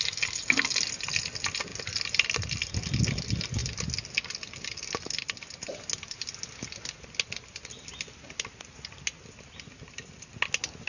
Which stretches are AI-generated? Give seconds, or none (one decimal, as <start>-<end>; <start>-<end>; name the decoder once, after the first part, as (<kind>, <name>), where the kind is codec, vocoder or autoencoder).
none